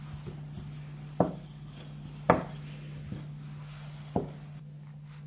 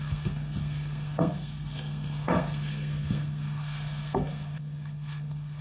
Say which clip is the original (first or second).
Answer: first